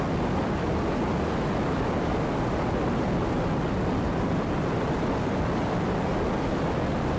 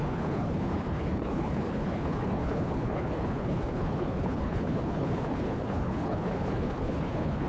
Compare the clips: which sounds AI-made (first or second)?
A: second